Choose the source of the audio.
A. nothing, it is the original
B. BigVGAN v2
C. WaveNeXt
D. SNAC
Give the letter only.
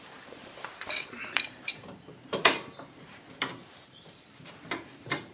B